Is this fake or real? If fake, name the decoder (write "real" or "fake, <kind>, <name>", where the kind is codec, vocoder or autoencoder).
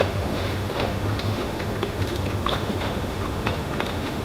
fake, autoencoder, DAC-VAE